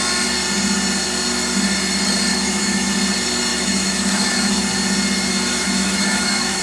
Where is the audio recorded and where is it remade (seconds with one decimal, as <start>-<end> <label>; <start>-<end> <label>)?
0.0-2.3 recorded; 2.3-2.9 remade; 2.9-3.5 recorded; 3.5-4.7 remade; 4.7-5.5 recorded; 5.5-6.6 remade